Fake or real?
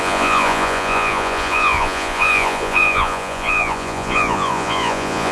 fake